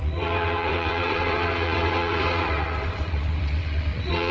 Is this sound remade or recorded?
remade